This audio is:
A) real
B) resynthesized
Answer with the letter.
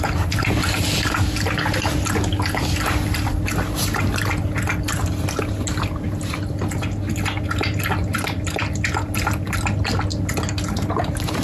A